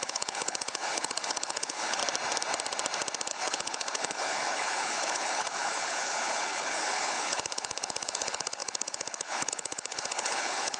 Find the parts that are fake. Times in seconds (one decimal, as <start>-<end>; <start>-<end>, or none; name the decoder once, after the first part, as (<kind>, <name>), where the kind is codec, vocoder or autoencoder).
0.0-2.0 (codec, HILCodec); 3.3-10.8